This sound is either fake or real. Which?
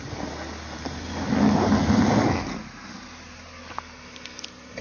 real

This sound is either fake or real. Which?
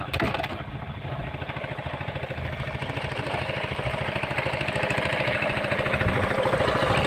real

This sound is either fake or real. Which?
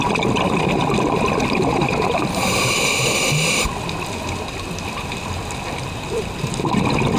real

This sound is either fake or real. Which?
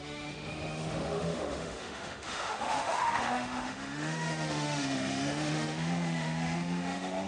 fake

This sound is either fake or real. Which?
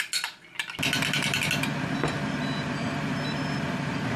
real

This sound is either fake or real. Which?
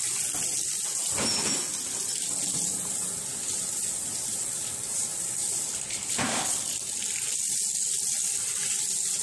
real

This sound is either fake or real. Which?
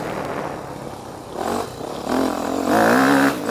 real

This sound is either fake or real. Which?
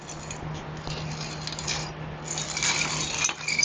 real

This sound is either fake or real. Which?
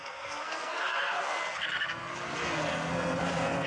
fake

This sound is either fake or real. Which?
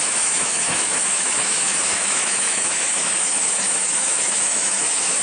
fake